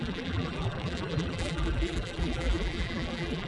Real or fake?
fake